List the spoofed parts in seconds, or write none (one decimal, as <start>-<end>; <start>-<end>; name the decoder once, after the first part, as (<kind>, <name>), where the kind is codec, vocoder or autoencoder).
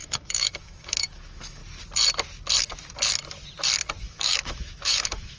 0.0-1.6 (autoencoder, DAC-VAE); 4.0-5.4